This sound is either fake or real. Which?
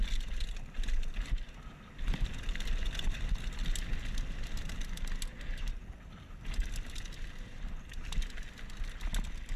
real